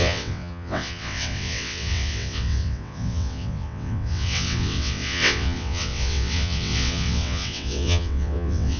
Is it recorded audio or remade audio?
remade